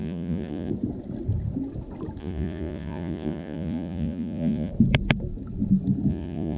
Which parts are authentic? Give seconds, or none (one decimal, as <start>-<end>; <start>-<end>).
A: 0.7-2.2; 4.7-6.1